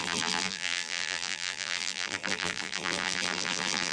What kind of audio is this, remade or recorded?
remade